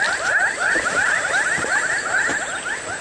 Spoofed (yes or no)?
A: yes